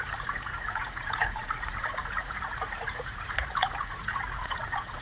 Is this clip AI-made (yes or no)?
yes